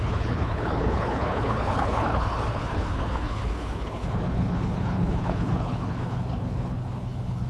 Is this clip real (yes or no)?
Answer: no